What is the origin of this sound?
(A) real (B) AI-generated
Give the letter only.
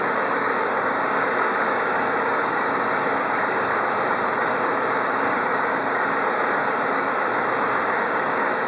B